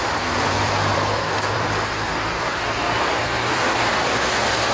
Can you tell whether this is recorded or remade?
remade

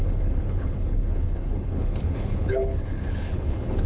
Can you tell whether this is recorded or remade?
remade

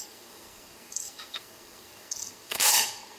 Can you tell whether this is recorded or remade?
remade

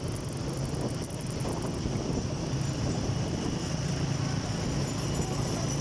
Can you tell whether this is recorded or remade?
recorded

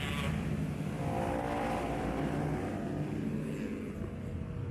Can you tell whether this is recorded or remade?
recorded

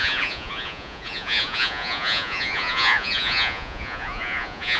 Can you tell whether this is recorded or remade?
remade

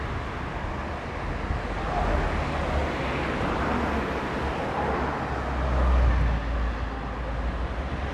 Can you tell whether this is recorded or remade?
recorded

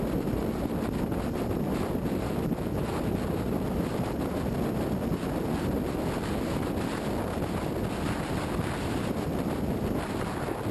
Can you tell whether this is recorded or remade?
recorded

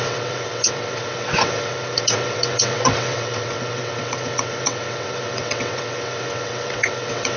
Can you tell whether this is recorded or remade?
remade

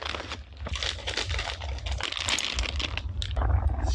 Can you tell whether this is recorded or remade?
recorded